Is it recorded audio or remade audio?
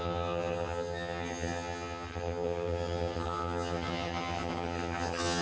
remade